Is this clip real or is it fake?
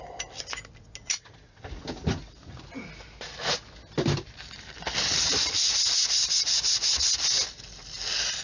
real